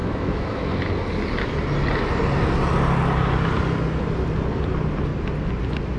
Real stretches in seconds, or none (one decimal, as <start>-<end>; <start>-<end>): 0.7-6.0